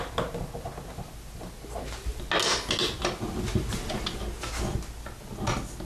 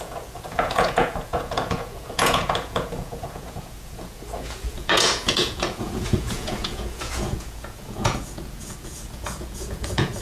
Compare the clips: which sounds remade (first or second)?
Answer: second